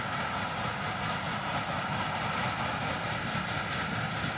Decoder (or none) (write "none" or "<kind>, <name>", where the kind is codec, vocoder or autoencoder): none